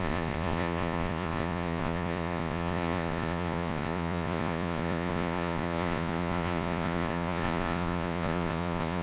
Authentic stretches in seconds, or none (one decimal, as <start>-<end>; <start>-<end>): none

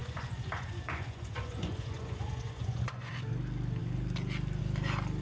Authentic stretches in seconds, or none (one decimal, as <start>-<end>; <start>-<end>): 3.1-5.2

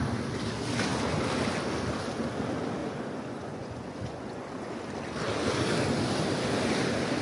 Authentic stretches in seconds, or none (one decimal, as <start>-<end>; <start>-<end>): 0.0-2.8; 4.7-7.2

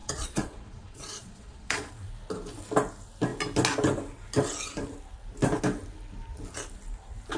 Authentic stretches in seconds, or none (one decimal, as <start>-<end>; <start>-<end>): 1.9-7.4

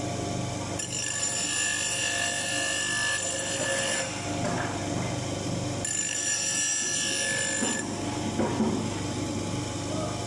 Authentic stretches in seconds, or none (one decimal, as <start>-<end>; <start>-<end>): 0.0-10.3

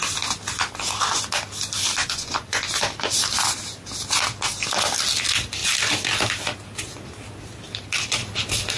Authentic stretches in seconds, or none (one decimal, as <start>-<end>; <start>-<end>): 0.0-2.0; 2.7-8.8

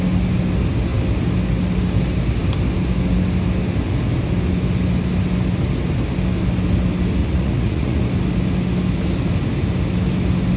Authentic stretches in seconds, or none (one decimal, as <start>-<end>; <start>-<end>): 0.0-7.2; 8.0-10.6

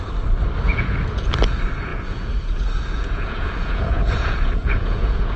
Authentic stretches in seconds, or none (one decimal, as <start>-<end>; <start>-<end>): 0.0-0.7; 1.3-1.9